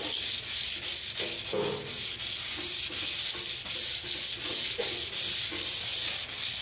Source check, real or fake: real